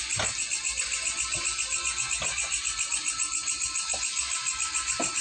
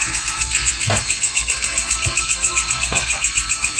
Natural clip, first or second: first